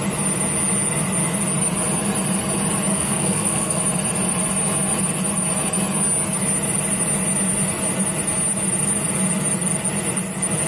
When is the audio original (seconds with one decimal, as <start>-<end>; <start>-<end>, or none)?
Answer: 0.0-2.9; 3.8-10.7